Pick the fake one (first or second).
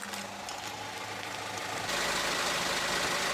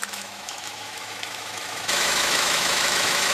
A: second